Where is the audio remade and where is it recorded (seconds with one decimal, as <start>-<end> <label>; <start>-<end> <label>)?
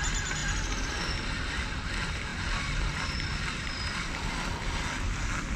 0.0-2.3 recorded; 2.3-4.3 remade; 4.3-5.6 recorded